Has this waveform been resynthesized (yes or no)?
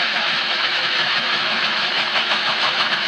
yes